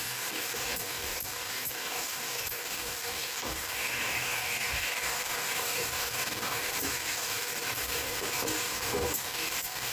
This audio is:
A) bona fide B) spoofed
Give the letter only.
B